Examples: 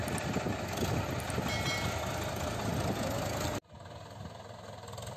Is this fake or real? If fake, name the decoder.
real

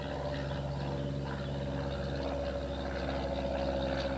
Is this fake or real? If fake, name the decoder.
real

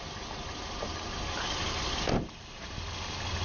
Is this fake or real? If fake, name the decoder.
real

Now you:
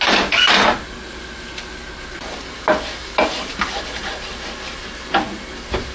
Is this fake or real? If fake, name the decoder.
real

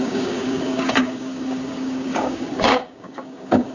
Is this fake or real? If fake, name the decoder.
fake, codec, DAC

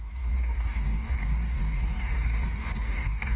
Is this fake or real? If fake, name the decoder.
fake, codec, DAC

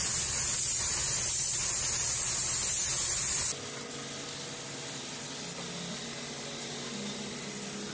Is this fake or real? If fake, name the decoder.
real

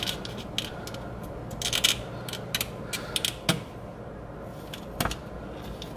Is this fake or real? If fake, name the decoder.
real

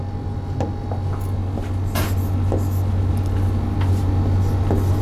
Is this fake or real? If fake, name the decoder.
real